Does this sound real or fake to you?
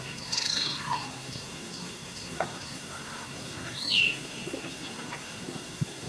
fake